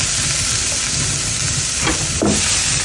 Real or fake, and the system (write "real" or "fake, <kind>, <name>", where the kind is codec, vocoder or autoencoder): real